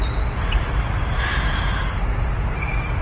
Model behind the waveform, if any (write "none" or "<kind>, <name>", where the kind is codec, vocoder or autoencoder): none